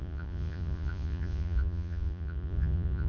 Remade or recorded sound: remade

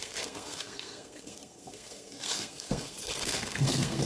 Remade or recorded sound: remade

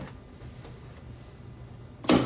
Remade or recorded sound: recorded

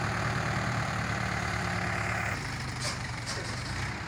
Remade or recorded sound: remade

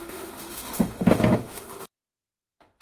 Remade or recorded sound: remade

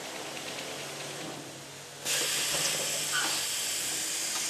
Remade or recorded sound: recorded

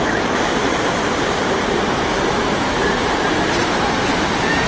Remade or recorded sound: remade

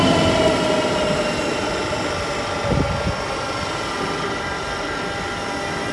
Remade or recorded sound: recorded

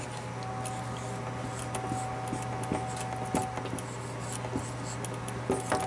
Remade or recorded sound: recorded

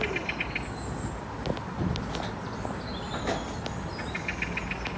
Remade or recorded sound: recorded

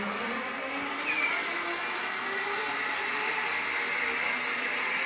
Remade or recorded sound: recorded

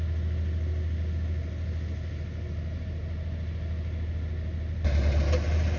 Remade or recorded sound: recorded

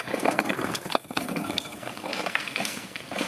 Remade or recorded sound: remade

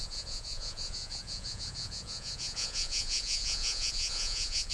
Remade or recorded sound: remade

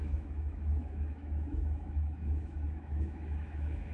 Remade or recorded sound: remade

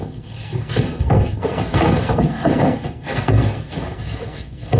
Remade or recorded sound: remade